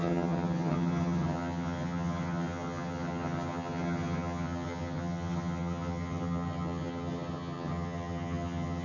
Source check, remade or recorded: remade